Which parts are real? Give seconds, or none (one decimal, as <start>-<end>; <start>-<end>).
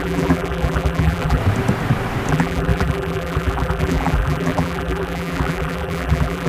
1.4-2.3